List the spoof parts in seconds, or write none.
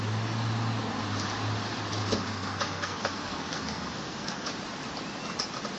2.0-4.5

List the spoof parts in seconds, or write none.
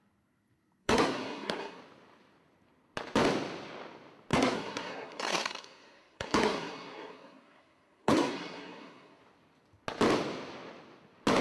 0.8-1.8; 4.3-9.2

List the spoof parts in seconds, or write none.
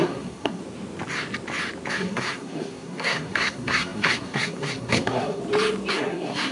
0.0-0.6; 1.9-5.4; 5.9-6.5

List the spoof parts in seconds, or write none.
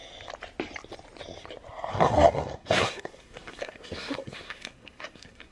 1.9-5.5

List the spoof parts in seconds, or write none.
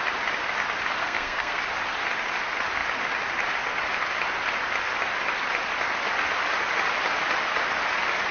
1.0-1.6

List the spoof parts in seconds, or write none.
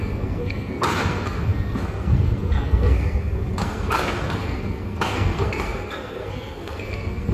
0.0-7.3